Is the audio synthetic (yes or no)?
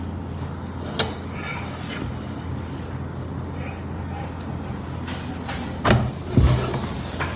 no